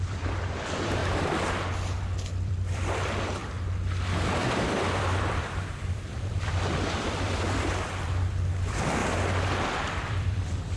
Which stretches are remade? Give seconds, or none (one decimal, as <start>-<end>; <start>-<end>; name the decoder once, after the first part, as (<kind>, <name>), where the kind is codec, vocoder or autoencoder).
0.0-1.0 (vocoder, BigVGAN v2); 2.0-3.4; 4.5-9.0; 10.1-10.8

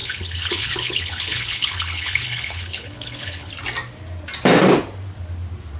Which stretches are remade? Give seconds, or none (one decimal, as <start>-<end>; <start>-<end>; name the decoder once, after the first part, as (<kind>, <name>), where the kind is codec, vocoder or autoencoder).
0.0-3.5 (codec, HILCodec)

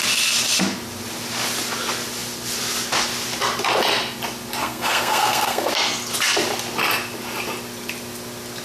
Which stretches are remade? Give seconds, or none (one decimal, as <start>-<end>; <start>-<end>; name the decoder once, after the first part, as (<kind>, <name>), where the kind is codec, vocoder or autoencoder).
4.6-5.7 (codec, SNAC)

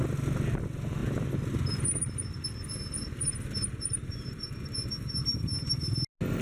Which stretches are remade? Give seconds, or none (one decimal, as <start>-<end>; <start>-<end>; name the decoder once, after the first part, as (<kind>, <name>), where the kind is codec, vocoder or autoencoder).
none

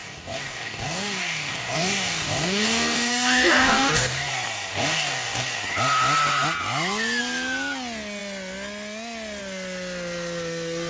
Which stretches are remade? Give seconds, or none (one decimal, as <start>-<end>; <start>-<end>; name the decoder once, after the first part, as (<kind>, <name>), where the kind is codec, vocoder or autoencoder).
0.0-4.3 (codec, DAC); 4.7-5.6